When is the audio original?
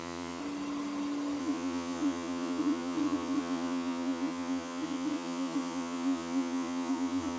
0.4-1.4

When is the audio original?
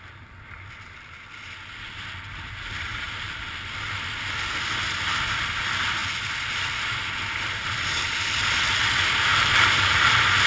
0.0-2.9; 3.4-9.3; 9.9-10.5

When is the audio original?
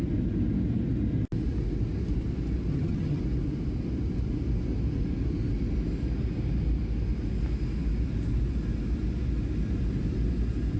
0.0-2.7; 3.2-10.8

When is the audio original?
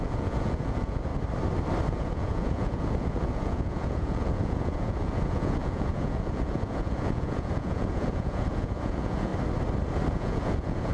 1.1-1.9; 9.3-10.1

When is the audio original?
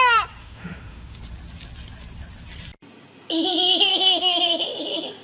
0.0-0.4; 1.2-3.9; 4.4-5.2